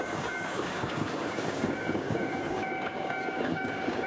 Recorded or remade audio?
remade